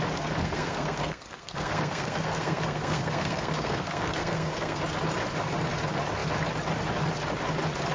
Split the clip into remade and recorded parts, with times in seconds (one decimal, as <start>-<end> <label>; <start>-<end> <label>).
0.0-0.4 recorded; 0.4-4.8 remade; 4.8-7.9 recorded